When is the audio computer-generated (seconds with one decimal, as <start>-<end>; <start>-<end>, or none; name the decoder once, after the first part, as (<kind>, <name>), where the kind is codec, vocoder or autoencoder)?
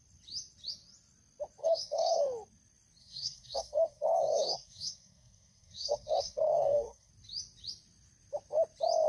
1.6-2.2 (codec, SNAC); 3.0-7.1